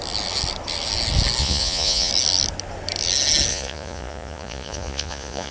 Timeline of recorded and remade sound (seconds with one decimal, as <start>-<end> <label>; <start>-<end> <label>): 0.0-1.4 recorded; 1.4-2.1 remade; 2.1-3.5 recorded; 3.5-5.5 remade

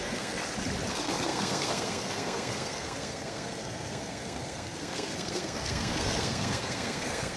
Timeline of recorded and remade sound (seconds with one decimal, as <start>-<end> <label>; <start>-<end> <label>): 0.0-0.4 remade; 0.4-0.9 recorded; 0.9-7.4 remade

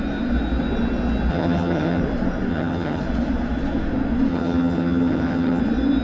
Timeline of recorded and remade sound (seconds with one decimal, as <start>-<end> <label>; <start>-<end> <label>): 0.0-1.3 recorded; 1.3-2.0 remade; 2.0-2.5 recorded; 2.5-3.0 remade; 3.0-4.3 recorded; 4.3-5.6 remade; 5.6-6.0 recorded

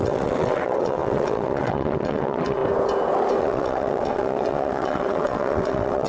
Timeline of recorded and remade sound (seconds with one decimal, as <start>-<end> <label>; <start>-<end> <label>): 0.0-2.6 remade; 2.6-3.4 recorded; 3.4-6.1 remade

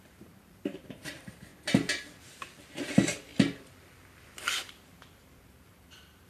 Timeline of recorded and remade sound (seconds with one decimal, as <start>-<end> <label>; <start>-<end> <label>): 0.0-1.5 remade; 1.5-2.2 recorded; 2.2-3.3 remade; 3.3-4.7 recorded; 4.7-6.3 remade

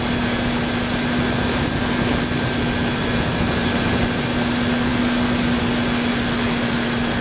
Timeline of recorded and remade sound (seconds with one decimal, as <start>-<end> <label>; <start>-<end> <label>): 0.0-7.2 recorded

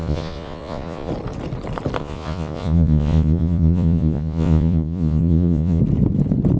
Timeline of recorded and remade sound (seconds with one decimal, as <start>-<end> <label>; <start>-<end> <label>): 0.0-1.1 remade; 1.1-2.0 recorded; 2.0-5.8 remade; 5.8-6.6 recorded